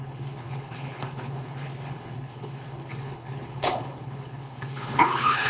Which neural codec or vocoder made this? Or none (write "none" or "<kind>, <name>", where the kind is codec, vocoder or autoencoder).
codec, HILCodec